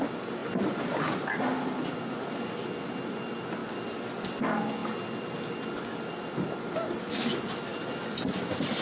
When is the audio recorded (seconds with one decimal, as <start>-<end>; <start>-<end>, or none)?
0.0-0.4; 1.0-8.8